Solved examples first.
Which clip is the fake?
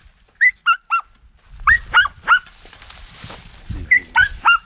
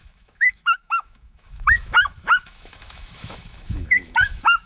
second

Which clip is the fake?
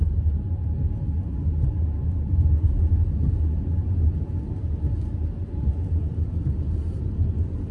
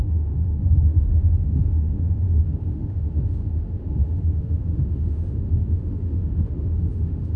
second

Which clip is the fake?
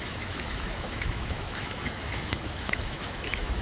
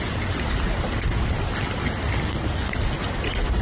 first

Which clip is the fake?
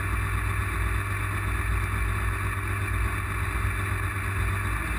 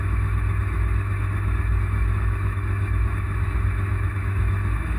second